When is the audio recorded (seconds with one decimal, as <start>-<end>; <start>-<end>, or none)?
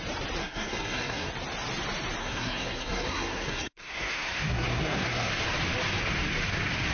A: 0.0-0.4; 1.3-2.2; 5.3-6.9